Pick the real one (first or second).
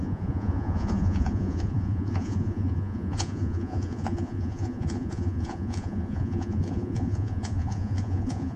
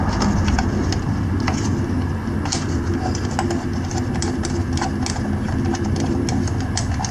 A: second